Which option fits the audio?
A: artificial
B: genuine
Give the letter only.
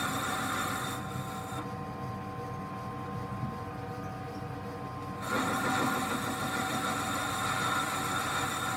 B